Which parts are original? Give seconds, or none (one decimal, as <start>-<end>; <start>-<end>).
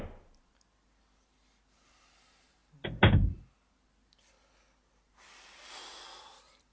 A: 0.0-6.7